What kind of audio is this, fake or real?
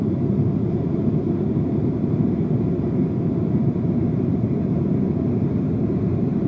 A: fake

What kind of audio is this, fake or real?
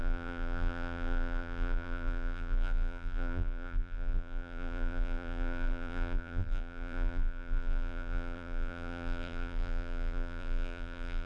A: fake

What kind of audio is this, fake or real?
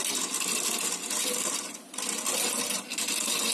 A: real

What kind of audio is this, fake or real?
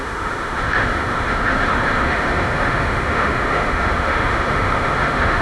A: fake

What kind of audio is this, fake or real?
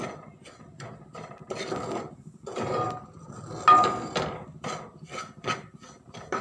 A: real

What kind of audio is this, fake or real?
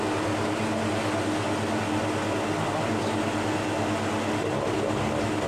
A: real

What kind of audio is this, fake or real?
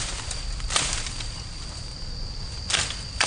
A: real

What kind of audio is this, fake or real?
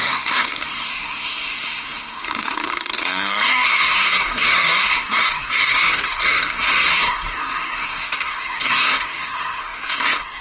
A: fake